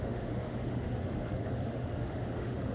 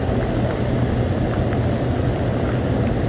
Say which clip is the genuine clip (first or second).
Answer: second